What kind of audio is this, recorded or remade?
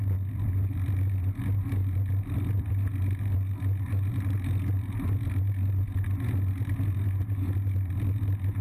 recorded